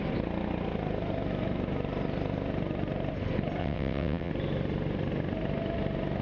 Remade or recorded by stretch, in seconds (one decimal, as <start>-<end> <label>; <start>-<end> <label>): 0.0-3.6 recorded; 3.6-4.3 remade; 4.3-6.2 recorded